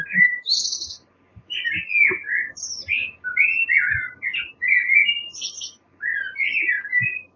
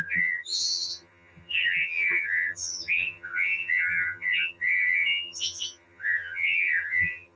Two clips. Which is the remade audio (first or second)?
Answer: second